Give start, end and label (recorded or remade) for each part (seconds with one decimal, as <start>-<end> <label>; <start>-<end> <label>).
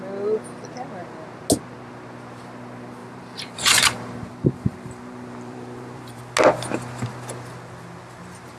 0.0-3.0 recorded; 3.0-6.2 remade; 6.2-8.6 recorded